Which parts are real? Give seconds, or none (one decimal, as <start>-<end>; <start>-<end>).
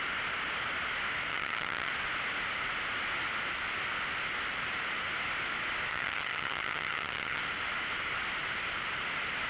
0.0-1.3; 1.9-5.9; 7.4-9.5